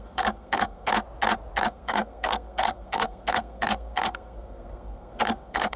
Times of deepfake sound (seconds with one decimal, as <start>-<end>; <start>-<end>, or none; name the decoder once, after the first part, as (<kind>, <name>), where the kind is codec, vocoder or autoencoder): 0.0-0.9 (codec, SNAC); 1.6-5.8